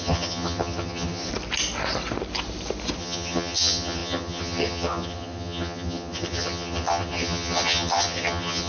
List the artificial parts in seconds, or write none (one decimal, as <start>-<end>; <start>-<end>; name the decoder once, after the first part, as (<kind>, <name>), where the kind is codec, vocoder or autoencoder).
0.0-1.3 (vocoder, HiFi-GAN); 3.0-8.7